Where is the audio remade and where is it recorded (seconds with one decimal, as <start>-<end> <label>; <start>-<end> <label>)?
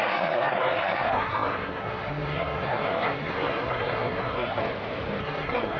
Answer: 0.0-4.6 remade; 4.6-5.2 recorded; 5.2-5.8 remade